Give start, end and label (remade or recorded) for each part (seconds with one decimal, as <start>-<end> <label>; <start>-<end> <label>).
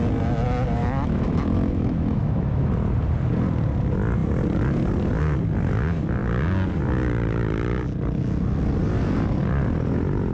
0.0-0.8 recorded; 0.8-2.7 remade; 2.7-10.3 recorded